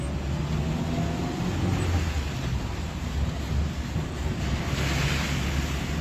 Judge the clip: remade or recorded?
recorded